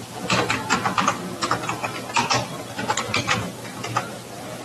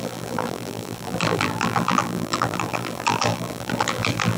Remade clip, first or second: second